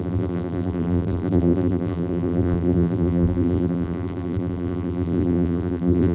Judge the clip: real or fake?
fake